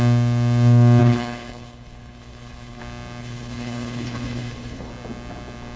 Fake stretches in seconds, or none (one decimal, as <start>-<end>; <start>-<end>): 1.0-2.8; 3.2-4.9